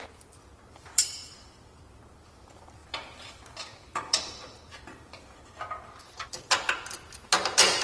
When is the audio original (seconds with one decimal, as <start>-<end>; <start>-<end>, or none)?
none